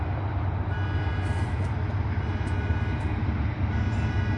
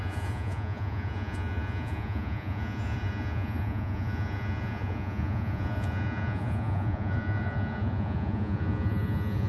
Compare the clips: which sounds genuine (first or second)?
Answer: first